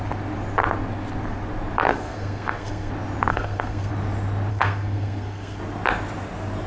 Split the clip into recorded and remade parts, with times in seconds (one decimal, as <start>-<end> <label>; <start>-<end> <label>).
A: 0.0-1.9 recorded; 1.9-2.9 remade; 2.9-3.3 recorded; 3.3-3.9 remade; 3.9-4.5 recorded; 4.5-5.6 remade; 5.6-6.7 recorded